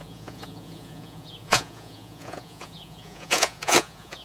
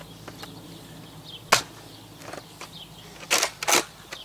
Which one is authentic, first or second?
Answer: second